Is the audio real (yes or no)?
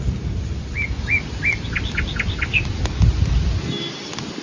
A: yes